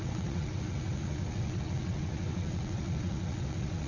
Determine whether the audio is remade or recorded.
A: remade